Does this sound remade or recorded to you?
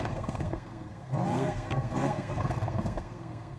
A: remade